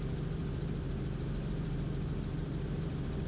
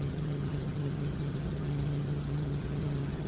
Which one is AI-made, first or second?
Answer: second